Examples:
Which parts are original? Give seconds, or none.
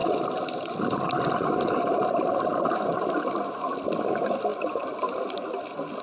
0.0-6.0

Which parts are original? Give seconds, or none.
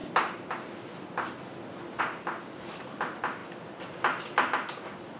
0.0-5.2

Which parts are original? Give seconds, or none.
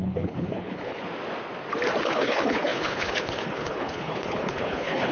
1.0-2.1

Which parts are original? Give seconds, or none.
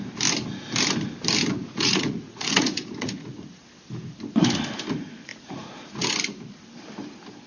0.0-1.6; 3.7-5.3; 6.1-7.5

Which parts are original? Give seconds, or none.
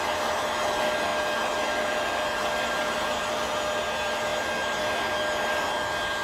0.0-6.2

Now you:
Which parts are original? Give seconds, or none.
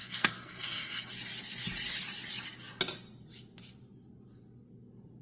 1.1-5.2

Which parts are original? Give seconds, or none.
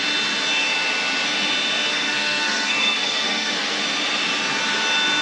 0.0-1.9; 3.8-5.2